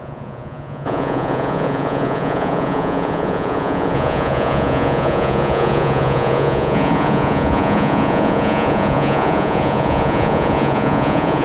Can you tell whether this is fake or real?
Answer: fake